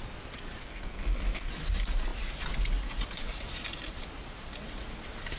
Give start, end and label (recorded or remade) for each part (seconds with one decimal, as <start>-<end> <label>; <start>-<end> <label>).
0.0-0.6 recorded; 0.6-1.5 remade; 1.5-5.4 recorded